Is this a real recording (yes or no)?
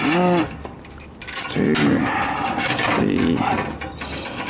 yes